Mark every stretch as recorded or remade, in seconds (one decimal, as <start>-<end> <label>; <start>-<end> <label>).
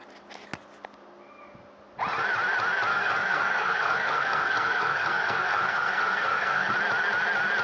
0.0-2.9 recorded; 2.9-6.7 remade; 6.7-7.6 recorded